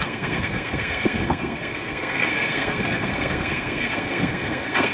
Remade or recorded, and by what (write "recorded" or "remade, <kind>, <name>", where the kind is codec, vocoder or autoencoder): remade, codec, SNAC